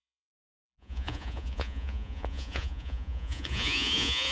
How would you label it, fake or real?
fake